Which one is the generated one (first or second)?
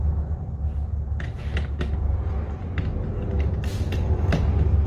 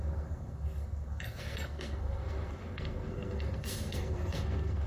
second